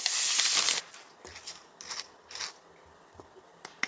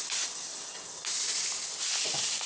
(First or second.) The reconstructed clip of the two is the first